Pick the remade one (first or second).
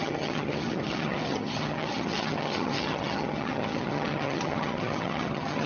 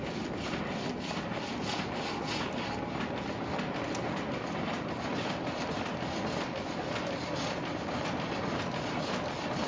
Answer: first